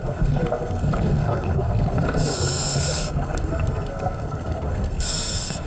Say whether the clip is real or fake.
fake